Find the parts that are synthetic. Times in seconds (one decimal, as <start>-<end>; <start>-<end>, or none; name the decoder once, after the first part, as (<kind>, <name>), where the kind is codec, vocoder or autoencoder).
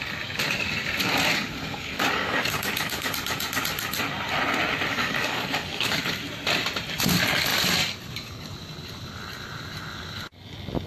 1.3-3.1 (codec, DAC); 4.9-6.2